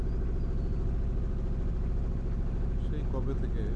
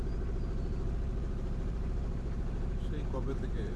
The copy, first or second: second